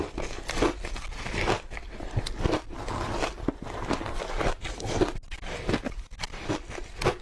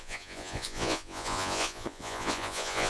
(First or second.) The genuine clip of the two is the first